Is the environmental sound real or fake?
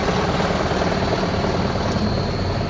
real